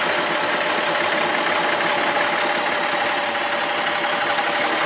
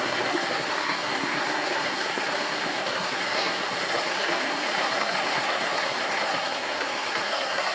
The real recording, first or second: first